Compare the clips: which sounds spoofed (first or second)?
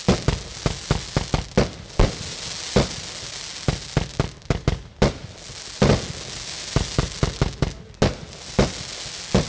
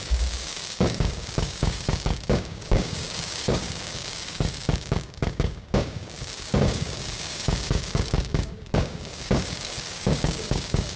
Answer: second